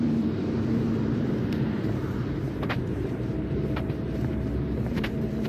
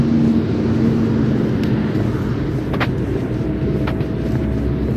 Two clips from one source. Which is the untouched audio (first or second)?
second